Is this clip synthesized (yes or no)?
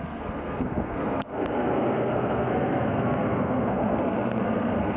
yes